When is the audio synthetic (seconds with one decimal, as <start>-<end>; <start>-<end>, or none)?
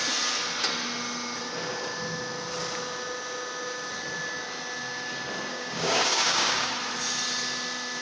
5.5-6.7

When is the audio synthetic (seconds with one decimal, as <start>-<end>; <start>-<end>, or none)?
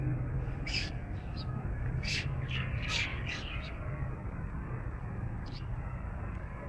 0.0-6.7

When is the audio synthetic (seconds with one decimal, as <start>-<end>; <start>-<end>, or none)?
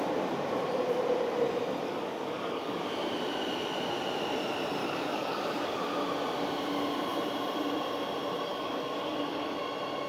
1.8-2.8; 4.8-5.8; 8.5-9.6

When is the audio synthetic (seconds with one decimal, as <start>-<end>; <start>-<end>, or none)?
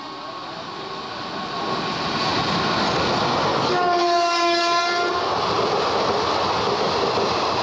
3.5-5.1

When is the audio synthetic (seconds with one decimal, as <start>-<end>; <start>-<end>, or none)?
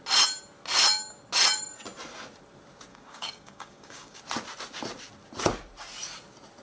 2.9-4.2